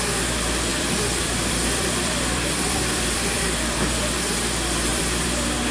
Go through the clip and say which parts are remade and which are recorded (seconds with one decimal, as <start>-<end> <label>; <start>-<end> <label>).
0.0-0.7 recorded; 0.7-4.1 remade; 4.1-4.9 recorded; 4.9-5.7 remade